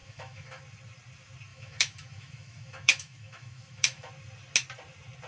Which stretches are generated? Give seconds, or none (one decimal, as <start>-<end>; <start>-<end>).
0.0-0.6; 1.5-4.1